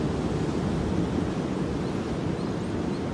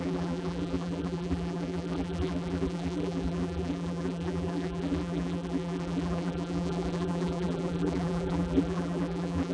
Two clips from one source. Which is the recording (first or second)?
first